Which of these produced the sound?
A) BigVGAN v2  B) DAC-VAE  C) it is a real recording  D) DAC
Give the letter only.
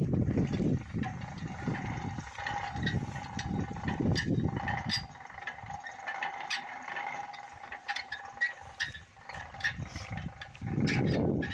C